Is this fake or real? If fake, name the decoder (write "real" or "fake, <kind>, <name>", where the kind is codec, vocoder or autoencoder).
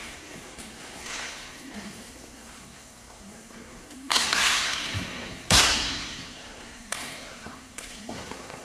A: fake, codec, SNAC